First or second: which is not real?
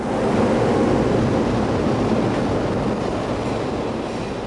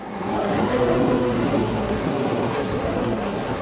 second